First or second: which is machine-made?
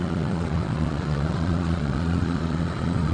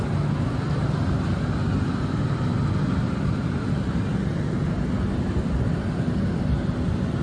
first